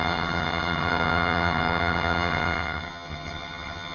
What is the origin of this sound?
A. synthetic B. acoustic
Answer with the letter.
A